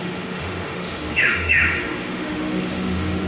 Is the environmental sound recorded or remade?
remade